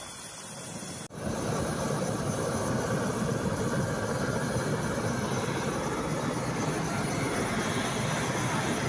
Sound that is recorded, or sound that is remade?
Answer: recorded